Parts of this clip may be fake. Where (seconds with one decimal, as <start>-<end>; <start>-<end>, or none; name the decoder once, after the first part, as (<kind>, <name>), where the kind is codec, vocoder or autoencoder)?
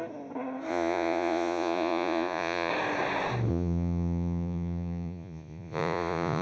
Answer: 0.7-2.7 (vocoder, Vocos); 3.5-6.4